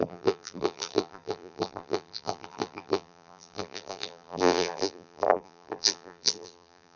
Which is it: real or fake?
fake